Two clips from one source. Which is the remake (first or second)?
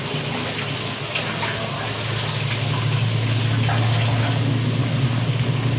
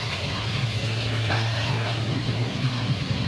second